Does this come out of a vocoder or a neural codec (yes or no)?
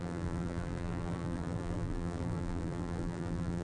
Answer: yes